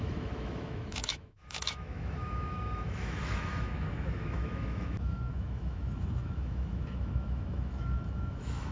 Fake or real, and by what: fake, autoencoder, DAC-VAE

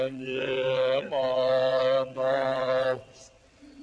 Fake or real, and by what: fake, vocoder, WaveNeXt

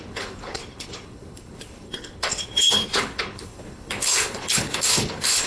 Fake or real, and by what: fake, codec, HILCodec